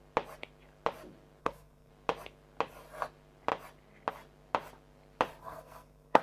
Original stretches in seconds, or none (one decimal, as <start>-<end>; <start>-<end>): 0.0-1.4; 1.9-5.4